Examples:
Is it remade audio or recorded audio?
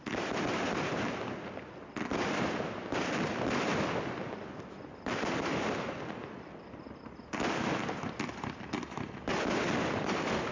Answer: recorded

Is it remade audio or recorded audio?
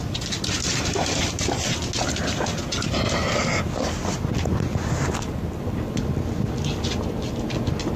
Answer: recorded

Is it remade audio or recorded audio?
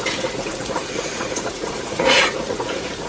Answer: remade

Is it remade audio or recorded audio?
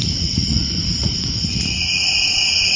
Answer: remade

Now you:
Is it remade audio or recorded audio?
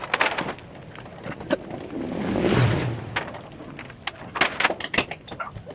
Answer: recorded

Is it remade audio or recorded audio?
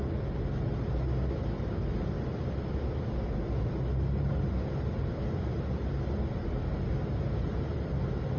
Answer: recorded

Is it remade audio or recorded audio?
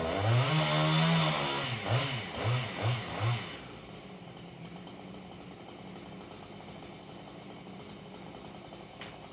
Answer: recorded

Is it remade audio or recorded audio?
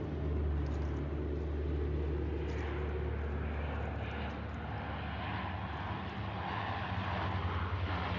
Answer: recorded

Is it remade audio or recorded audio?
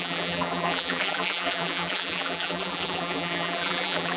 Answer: remade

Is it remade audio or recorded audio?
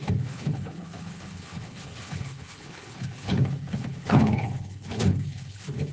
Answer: remade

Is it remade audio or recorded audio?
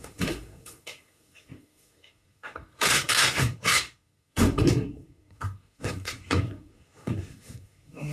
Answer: remade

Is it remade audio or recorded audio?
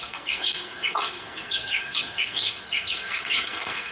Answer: remade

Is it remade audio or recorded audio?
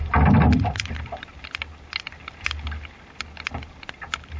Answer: recorded